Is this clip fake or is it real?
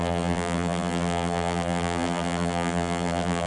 fake